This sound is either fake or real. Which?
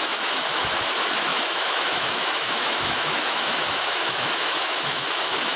fake